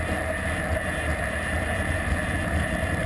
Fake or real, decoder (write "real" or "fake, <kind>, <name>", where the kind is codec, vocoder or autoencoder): fake, vocoder, BigVGAN v2